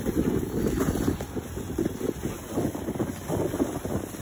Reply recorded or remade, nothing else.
recorded